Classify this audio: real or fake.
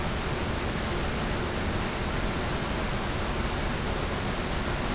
real